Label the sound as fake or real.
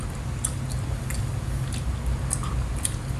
real